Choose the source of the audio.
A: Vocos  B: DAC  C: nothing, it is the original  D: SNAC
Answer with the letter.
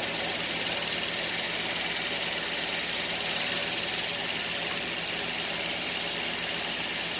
C